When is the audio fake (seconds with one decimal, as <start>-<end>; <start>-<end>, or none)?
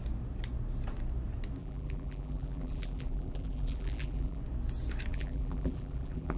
1.6-4.4; 5.1-6.4